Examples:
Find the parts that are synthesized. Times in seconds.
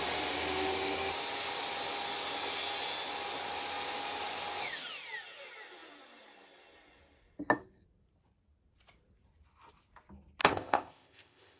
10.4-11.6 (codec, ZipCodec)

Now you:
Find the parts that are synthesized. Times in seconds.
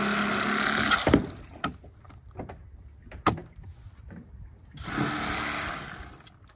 none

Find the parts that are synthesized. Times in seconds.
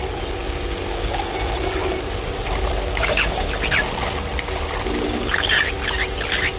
none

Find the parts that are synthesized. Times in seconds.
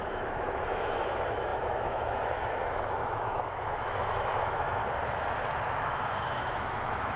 0.0-4.8 (autoencoder, DAC-VAE); 5.8-7.2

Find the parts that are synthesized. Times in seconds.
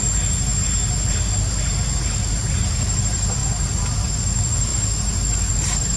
none